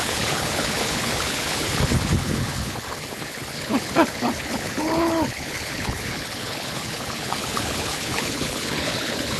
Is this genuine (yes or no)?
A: no